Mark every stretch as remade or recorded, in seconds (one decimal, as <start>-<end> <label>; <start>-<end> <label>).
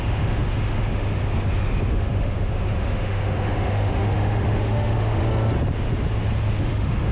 0.0-1.2 remade; 1.2-1.9 recorded; 1.9-5.3 remade; 5.3-6.6 recorded; 6.6-7.1 remade